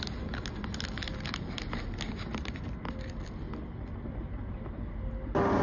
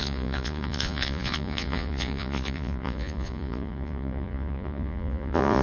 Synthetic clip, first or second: second